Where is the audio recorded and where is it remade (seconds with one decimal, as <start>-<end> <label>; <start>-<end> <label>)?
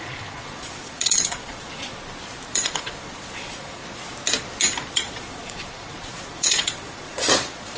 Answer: 0.0-1.9 remade; 1.9-2.5 recorded; 2.5-3.8 remade; 3.8-4.9 recorded; 4.9-7.8 remade